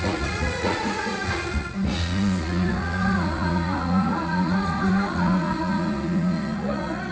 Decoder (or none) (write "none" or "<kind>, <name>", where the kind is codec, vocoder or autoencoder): vocoder, Vocos